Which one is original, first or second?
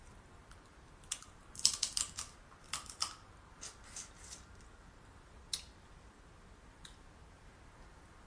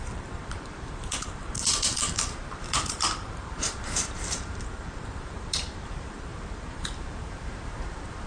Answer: first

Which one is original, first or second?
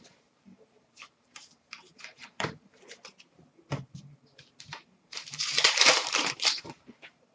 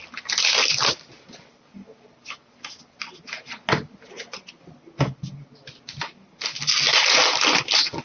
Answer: second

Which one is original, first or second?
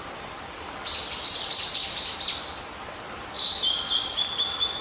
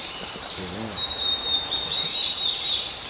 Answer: first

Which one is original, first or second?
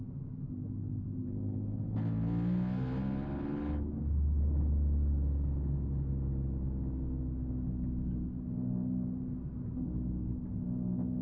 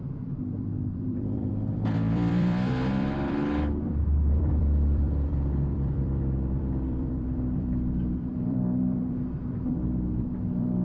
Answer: first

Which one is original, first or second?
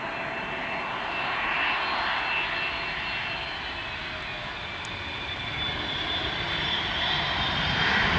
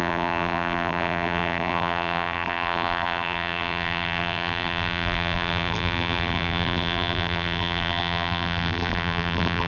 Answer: first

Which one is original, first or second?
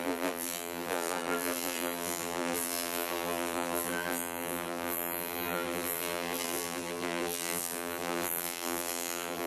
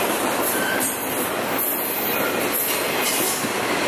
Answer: second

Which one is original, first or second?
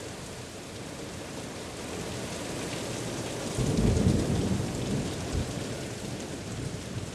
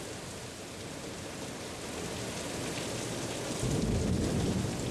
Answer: second